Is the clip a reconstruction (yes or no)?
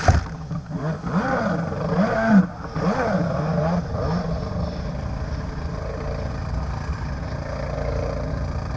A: no